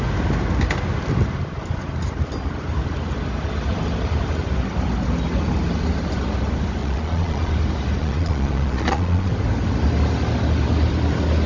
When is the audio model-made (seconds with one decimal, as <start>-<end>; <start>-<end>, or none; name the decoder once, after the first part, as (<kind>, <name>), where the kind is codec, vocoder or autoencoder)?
6.8-7.5 (vocoder, Vocos); 8.0-9.3